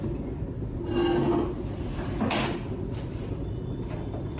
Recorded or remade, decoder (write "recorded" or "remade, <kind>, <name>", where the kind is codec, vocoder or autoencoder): recorded